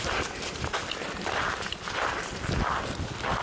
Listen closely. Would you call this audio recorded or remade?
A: recorded